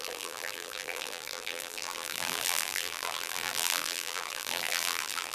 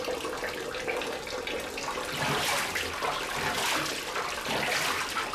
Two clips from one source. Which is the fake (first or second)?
first